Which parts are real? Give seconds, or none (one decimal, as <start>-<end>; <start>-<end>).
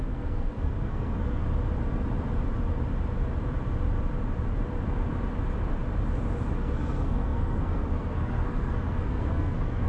1.4-6.6